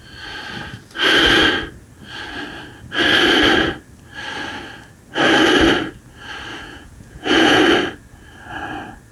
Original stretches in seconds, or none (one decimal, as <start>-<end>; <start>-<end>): 0.0-6.5; 7.6-9.1